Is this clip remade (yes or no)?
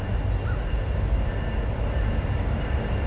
no